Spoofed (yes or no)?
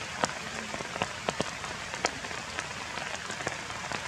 no